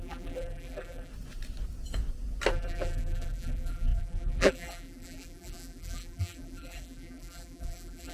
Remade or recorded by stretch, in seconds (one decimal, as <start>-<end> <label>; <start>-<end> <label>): 0.0-1.1 remade; 1.1-2.5 recorded; 2.5-8.1 remade